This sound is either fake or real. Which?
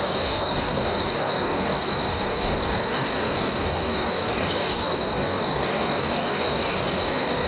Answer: fake